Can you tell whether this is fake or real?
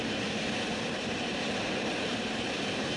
fake